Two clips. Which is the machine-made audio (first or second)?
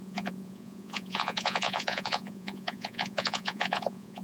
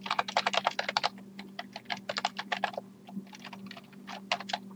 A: first